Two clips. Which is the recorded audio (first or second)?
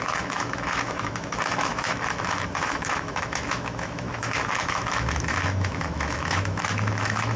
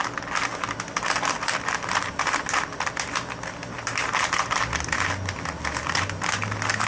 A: second